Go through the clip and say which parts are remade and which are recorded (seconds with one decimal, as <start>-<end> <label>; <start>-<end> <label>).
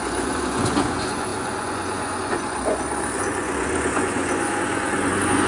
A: 0.0-5.5 remade